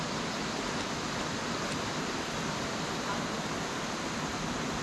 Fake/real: real